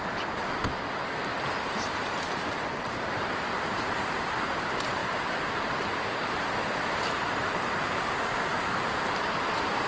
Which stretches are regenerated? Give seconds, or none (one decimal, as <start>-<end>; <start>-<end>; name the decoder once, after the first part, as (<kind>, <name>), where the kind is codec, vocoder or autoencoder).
1.3-4.5 (vocoder, BigVGAN v2); 5.0-7.9